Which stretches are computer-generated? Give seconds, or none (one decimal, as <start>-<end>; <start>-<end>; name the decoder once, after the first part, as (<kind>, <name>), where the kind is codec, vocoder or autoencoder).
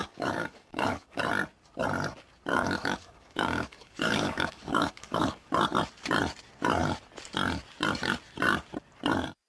0.0-1.2 (codec, DAC); 2.5-5.5